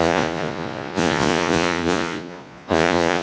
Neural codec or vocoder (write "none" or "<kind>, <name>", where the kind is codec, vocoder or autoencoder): vocoder, Vocos